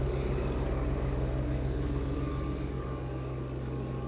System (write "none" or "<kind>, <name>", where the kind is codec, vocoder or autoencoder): codec, DAC